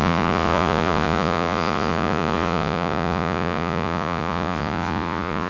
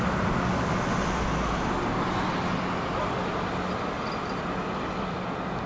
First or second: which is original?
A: second